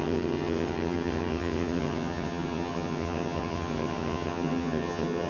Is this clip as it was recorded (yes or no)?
no